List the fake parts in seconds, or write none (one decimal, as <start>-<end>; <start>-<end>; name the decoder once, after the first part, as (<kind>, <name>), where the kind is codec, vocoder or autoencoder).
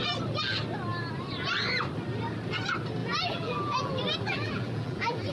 3.0-5.3 (vocoder, BigVGAN v2)